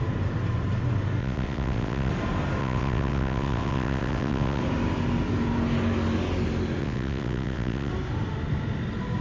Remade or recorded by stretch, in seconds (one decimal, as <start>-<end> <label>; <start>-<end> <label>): 0.0-1.2 recorded; 1.2-2.1 remade; 2.1-2.6 recorded; 2.6-4.6 remade; 4.6-6.8 recorded; 6.8-7.9 remade; 7.9-9.2 recorded